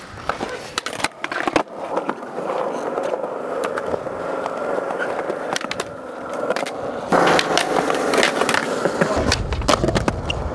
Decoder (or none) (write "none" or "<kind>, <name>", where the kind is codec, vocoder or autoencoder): none